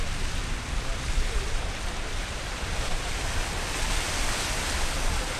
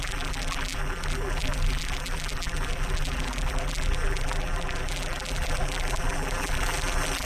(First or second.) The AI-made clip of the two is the second